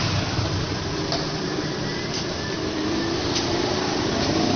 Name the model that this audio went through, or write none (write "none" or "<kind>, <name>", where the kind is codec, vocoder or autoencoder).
none